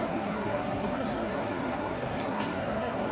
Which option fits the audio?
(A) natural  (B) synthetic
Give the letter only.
B